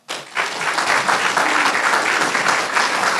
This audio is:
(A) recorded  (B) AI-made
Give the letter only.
A